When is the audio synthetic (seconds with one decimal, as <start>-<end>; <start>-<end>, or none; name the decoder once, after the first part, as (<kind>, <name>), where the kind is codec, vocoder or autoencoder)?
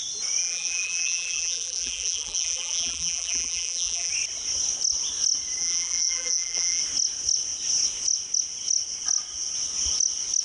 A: 0.4-4.1 (vocoder, BigVGAN v2); 5.6-6.8